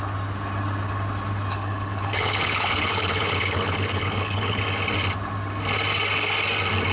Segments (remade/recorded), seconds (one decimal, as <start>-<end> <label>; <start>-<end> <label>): 0.0-1.5 recorded; 1.5-4.6 remade; 4.6-6.9 recorded